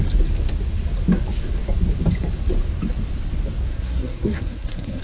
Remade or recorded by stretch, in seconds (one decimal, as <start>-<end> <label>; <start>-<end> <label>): 0.0-3.7 recorded; 3.7-5.0 remade